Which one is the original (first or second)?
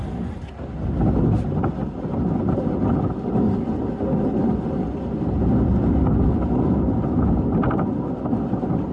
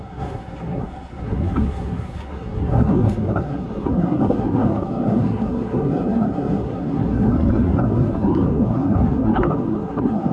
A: first